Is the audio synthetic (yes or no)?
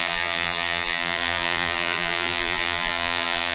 yes